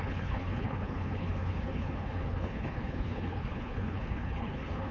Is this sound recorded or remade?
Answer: remade